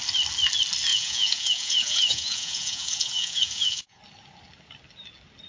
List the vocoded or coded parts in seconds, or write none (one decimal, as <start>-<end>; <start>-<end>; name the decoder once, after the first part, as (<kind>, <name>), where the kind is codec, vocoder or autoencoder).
0.9-4.0 (vocoder, Vocos)